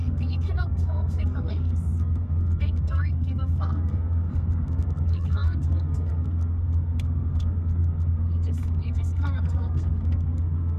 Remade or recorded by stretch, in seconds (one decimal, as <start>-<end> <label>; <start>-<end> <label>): 0.0-10.8 remade